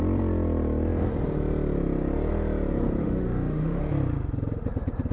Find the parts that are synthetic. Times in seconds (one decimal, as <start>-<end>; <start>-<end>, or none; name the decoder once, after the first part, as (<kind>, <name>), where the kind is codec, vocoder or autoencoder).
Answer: 3.0-3.8 (autoencoder, DAC-VAE)